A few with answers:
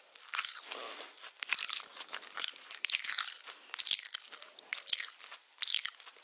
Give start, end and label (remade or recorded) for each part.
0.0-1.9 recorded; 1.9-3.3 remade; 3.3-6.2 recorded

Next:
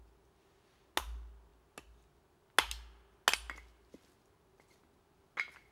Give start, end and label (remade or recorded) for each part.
0.0-5.7 recorded